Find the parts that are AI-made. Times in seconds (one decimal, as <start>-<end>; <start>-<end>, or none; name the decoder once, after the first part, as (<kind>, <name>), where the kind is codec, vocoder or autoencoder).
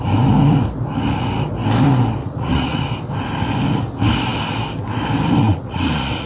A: 2.2-2.8 (vocoder, Vocos); 5.4-6.3